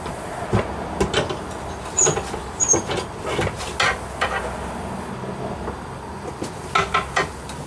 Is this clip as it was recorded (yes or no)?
yes